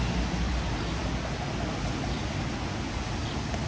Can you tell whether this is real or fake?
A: real